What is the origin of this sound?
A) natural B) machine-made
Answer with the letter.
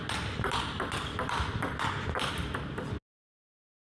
A